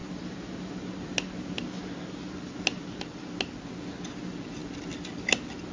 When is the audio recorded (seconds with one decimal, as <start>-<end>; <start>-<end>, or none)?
3.3-5.7